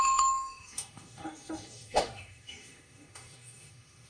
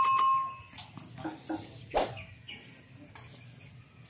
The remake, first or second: first